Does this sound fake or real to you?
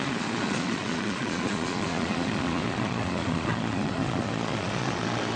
fake